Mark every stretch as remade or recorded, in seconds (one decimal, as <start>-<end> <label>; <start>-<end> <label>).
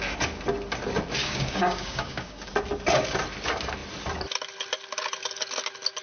0.0-1.2 recorded; 1.2-2.5 remade; 2.5-6.0 recorded